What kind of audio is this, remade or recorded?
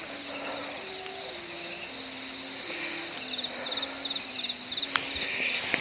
recorded